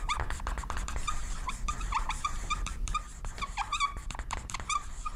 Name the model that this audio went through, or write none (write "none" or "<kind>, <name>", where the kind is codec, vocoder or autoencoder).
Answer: vocoder, BigVGAN v2